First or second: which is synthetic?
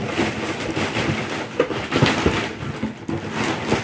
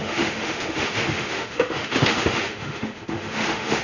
second